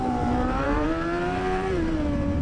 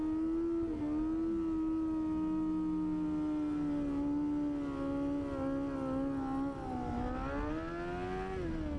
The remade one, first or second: first